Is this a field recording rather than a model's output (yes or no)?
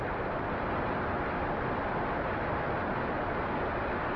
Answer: yes